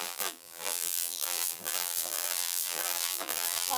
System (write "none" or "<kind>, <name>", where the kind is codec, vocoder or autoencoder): vocoder, BigVGAN v2